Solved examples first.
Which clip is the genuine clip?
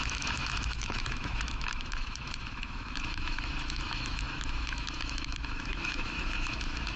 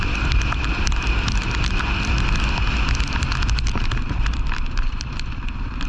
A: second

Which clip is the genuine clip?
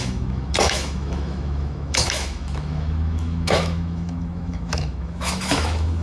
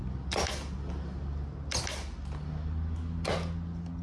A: second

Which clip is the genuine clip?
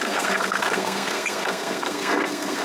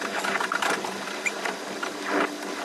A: second